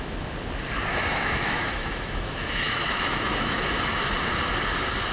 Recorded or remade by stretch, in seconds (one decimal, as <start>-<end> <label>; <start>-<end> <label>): 0.0-0.9 recorded; 0.9-4.0 remade; 4.0-5.1 recorded